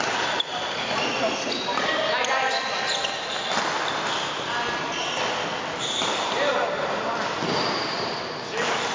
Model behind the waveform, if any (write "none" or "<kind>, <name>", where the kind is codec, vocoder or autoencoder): none